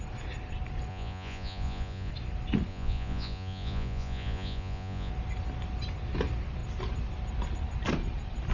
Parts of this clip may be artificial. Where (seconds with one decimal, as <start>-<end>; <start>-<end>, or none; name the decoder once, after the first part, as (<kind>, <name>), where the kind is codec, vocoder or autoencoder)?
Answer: 0.9-2.1 (vocoder, Vocos); 2.7-5.1